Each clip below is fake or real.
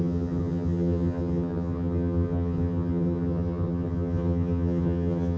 fake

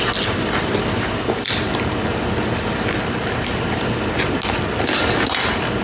real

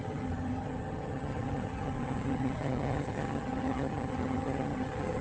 fake